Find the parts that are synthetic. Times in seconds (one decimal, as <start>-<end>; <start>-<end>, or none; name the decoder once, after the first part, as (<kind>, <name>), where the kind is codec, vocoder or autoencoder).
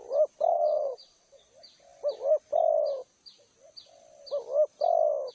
0.5-1.5 (vocoder, WaveNeXt)